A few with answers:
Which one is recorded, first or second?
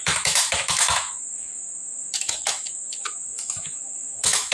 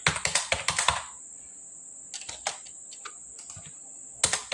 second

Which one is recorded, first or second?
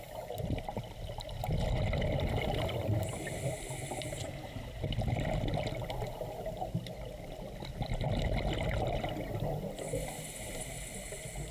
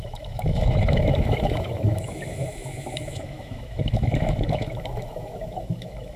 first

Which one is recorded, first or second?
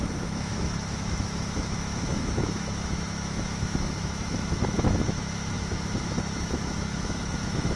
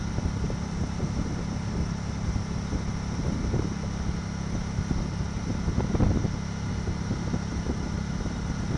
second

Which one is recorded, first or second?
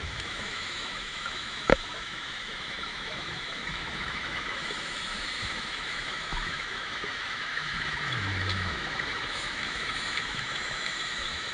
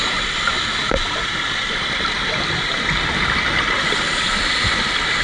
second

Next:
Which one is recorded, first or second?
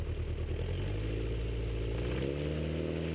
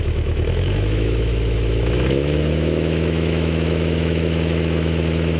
first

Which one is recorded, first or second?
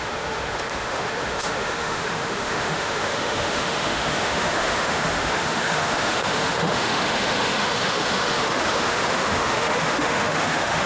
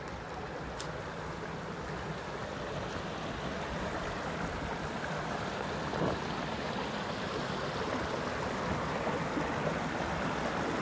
second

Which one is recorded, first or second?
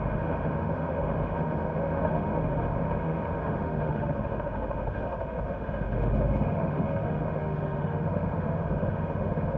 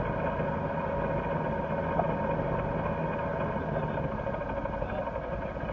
second